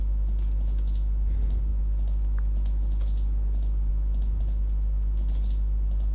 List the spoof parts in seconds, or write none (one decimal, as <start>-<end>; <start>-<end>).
none